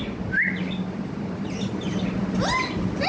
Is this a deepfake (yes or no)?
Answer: no